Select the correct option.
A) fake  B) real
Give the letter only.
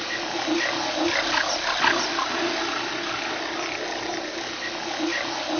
B